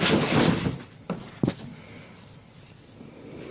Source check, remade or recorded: recorded